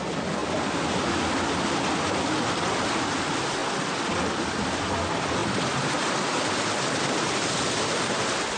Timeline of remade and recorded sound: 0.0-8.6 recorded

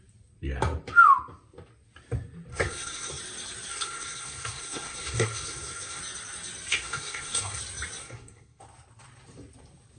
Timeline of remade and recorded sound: 0.0-2.5 recorded; 2.5-3.2 remade; 3.2-3.7 recorded; 3.7-6.0 remade; 6.0-6.7 recorded; 6.7-7.6 remade; 7.6-8.0 recorded; 8.0-8.6 remade; 8.6-10.0 recorded

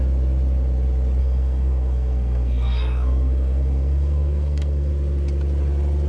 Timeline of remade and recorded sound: 0.0-1.2 recorded; 1.2-4.9 remade; 4.9-6.1 recorded

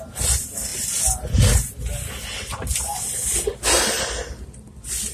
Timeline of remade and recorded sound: 0.0-5.1 recorded

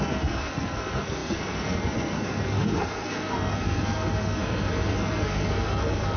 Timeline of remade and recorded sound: 0.0-6.2 remade